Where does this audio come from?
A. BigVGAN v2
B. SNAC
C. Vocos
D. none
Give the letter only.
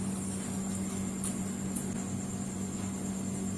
D